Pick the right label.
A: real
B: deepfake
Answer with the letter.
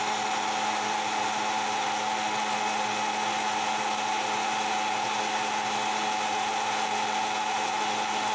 A